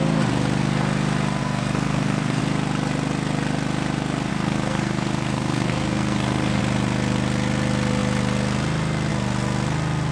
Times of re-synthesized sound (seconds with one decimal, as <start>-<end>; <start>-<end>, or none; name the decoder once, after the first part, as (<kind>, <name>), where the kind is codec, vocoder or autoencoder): 1.4-2.4 (codec, SNAC); 4.3-6.6